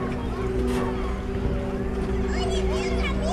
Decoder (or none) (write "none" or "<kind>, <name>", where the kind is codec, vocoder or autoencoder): none